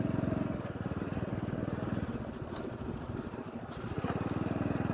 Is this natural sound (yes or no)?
yes